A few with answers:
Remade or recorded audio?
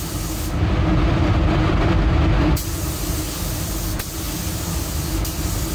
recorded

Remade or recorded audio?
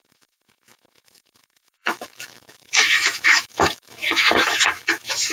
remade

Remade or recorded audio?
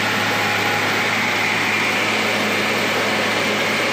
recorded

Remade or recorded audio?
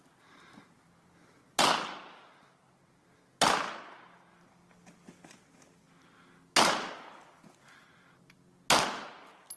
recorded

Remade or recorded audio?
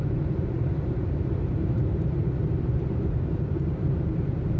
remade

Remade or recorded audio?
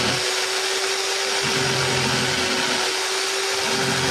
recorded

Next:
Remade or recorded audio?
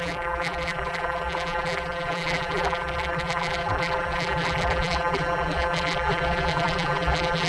remade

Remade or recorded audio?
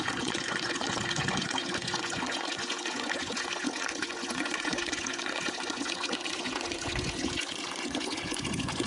remade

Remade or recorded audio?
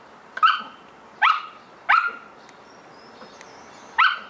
recorded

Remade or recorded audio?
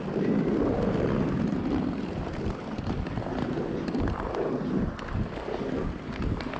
recorded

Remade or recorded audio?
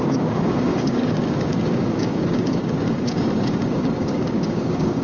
remade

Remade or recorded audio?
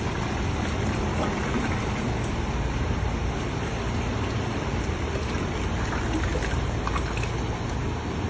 recorded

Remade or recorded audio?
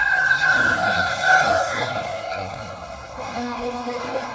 remade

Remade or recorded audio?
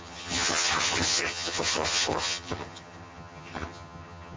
remade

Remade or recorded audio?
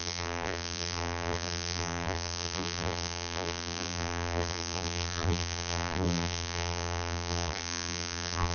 remade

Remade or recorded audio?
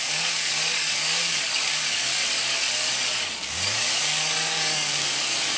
remade